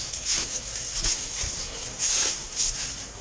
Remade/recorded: remade